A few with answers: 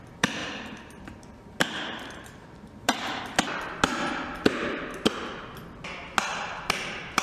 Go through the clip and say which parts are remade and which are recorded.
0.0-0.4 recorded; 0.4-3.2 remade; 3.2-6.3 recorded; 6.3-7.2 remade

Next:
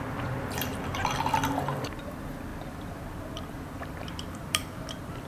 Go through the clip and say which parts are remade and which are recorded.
0.0-5.3 remade

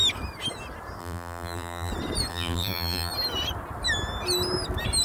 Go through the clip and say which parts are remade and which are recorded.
0.0-1.0 recorded; 1.0-1.9 remade; 1.9-2.3 recorded; 2.3-3.1 remade; 3.1-5.0 recorded

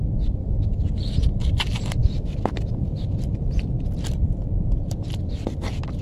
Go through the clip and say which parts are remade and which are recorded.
0.0-2.0 recorded; 2.0-5.0 remade; 5.0-6.0 recorded

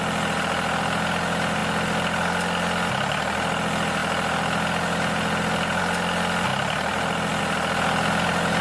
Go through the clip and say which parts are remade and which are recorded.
0.0-6.5 recorded; 6.5-7.4 remade; 7.4-8.6 recorded